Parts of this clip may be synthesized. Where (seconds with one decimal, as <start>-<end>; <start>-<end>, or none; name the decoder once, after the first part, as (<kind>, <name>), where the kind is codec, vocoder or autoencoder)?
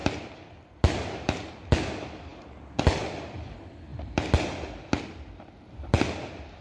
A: none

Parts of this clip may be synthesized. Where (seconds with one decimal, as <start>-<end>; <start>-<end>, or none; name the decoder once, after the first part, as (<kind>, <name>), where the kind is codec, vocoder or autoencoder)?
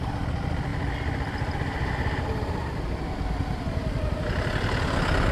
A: none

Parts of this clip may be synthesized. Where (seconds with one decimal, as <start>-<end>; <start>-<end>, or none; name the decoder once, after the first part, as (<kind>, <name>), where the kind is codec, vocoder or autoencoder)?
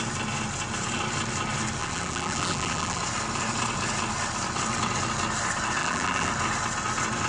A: 1.8-3.0 (vocoder, BigVGAN v2); 5.8-6.3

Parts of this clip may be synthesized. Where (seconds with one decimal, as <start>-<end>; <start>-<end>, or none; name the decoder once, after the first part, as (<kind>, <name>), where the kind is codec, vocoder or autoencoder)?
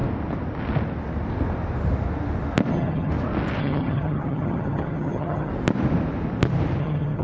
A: 2.7-3.1 (vocoder, HiFi-GAN); 3.6-5.5; 6.8-7.2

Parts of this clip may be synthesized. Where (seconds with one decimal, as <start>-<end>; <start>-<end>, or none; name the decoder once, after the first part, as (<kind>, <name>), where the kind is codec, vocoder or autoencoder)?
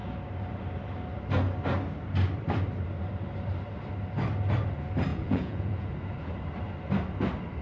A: 5.1-5.9 (vocoder, Vocos)